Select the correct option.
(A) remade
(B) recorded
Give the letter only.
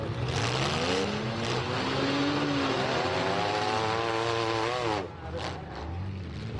B